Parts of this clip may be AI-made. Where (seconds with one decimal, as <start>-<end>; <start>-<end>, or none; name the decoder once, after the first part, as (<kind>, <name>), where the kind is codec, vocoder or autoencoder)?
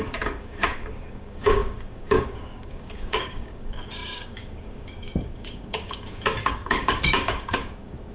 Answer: 0.0-8.1 (codec, DAC)